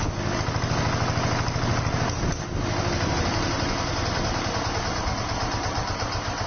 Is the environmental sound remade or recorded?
recorded